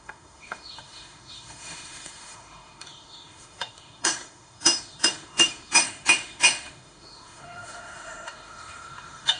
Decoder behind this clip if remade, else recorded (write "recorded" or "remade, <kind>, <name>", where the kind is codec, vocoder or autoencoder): remade, autoencoder, DAC-VAE